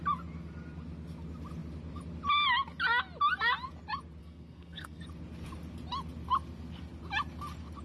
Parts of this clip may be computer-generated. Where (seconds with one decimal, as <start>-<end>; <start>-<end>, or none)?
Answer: 4.2-5.0